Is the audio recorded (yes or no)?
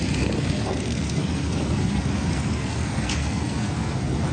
no